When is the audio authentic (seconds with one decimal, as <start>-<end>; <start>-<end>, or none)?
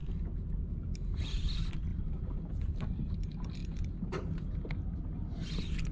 0.0-5.9